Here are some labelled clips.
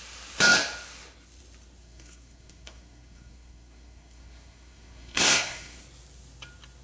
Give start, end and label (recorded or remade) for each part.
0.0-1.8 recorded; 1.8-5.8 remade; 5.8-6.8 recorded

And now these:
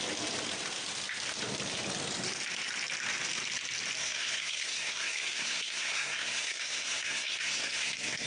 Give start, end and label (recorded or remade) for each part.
0.0-4.0 recorded; 4.0-8.3 remade

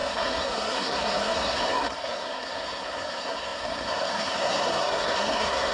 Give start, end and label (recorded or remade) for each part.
0.0-5.7 remade

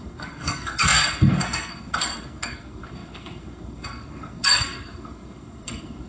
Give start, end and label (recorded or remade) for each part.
0.0-6.1 remade

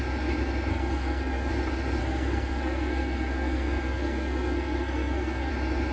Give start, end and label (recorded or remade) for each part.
0.0-0.7 recorded; 0.7-1.5 remade; 1.5-2.0 recorded; 2.0-5.5 remade; 5.5-5.9 recorded